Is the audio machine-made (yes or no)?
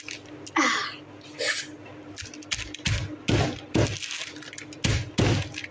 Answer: no